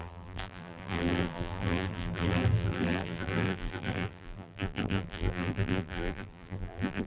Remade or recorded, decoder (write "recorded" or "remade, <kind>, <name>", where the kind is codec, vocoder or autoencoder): remade, vocoder, BigVGAN v2